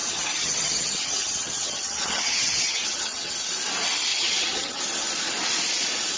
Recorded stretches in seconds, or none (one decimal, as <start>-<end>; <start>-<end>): 3.3-4.1; 4.8-6.2